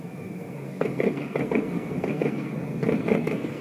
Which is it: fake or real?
fake